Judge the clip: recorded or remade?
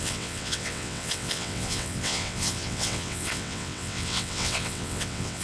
remade